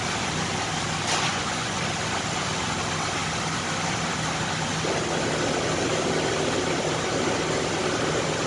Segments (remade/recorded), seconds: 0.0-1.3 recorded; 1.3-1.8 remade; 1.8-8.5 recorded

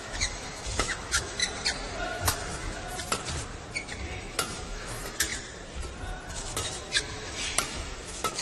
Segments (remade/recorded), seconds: 0.0-1.4 remade; 1.4-2.0 recorded; 2.0-2.8 remade; 2.8-4.1 recorded; 4.1-5.3 remade; 5.3-6.3 recorded; 6.3-8.4 remade

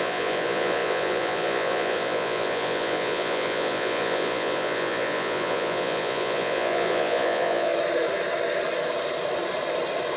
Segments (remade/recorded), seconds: 0.0-7.7 remade; 7.7-10.2 recorded

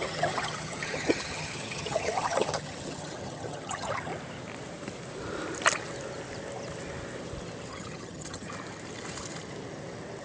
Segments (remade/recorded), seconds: 0.0-4.1 remade; 4.1-7.7 recorded; 7.7-8.5 remade; 8.5-10.2 recorded